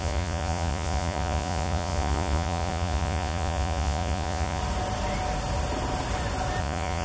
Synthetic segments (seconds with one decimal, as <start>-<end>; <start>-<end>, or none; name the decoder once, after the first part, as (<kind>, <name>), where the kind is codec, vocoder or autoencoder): 0.0-4.6 (vocoder, Vocos); 6.6-7.0